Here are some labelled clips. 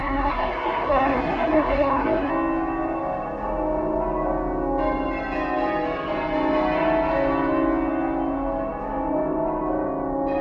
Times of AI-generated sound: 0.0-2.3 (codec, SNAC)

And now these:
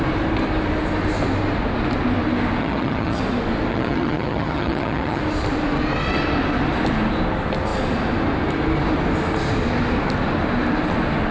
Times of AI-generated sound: 2.6-3.2 (vocoder, HiFi-GAN); 3.7-5.2

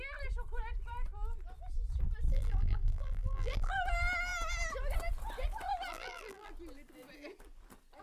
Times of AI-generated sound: 2.3-3.7 (vocoder, BigVGAN v2); 5.9-6.5

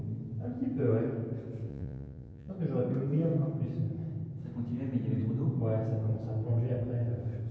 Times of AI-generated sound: 1.7-2.5 (vocoder, Vocos)

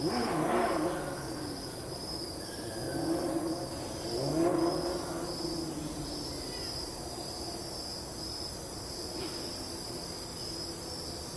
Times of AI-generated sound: none